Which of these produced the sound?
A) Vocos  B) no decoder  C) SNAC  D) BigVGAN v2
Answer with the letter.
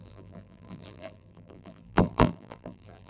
D